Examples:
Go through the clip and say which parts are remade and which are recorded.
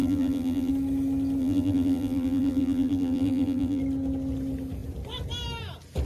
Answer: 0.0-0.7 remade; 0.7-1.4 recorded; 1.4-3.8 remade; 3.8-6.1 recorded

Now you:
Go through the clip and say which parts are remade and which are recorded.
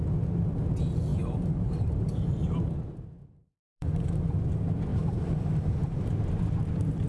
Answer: 0.0-1.1 recorded; 1.1-2.1 remade; 2.1-3.2 recorded; 3.2-4.3 remade; 4.3-4.9 recorded; 4.9-6.1 remade; 6.1-7.1 recorded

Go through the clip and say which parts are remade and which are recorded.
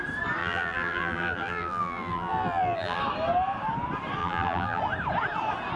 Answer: 0.0-0.4 recorded; 0.4-3.0 remade; 3.0-4.2 recorded; 4.2-4.8 remade; 4.8-5.8 recorded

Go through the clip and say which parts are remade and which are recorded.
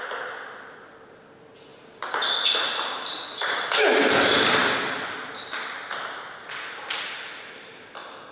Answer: 0.0-8.3 recorded